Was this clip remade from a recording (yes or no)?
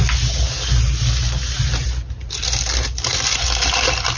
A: no